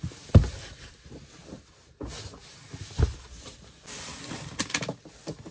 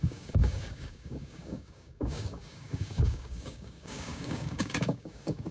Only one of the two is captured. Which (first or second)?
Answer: first